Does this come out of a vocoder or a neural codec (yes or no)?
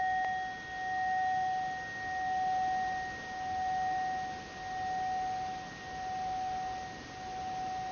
no